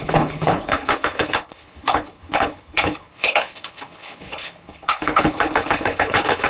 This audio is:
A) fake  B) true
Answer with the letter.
A